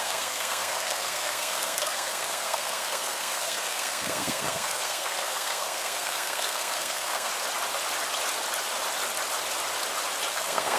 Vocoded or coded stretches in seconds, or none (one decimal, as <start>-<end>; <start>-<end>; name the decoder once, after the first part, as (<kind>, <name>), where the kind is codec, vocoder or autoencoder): 0.0-7.3 (codec, SNAC); 10.3-10.8